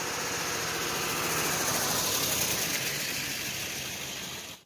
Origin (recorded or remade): recorded